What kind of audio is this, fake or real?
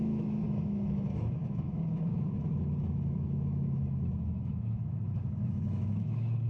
fake